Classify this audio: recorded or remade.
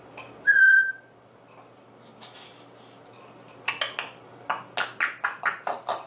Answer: recorded